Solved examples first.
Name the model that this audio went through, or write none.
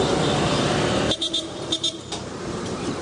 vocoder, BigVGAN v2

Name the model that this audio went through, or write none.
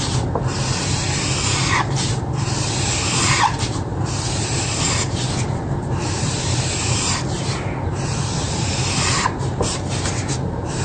vocoder, BigVGAN v2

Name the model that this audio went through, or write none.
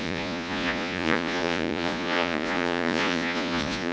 vocoder, Vocos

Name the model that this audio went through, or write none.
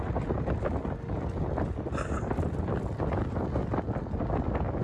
none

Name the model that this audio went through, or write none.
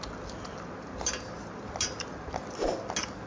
none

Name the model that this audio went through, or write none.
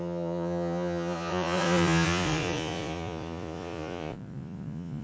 vocoder, Vocos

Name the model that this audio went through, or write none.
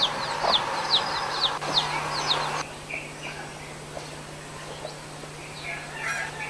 none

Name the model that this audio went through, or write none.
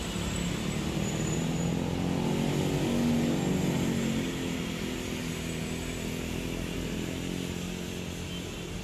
none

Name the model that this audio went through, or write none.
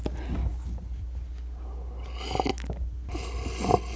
none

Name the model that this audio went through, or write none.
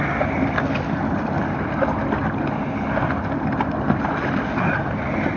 none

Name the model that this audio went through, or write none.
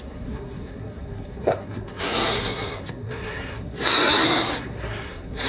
codec, SNAC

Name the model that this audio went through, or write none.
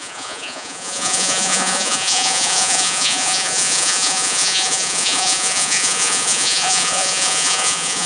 vocoder, Vocos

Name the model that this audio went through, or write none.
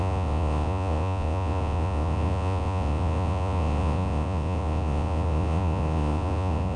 vocoder, Vocos